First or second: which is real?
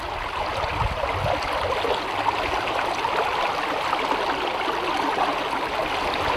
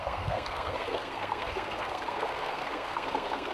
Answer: first